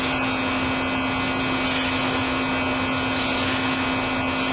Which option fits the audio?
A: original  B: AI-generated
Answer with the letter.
A